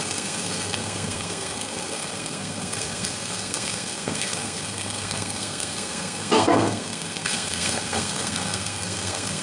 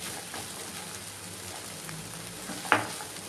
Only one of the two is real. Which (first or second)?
second